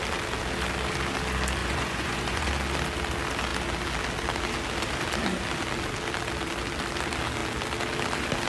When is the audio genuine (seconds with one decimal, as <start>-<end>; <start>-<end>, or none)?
0.0-1.6; 2.5-8.5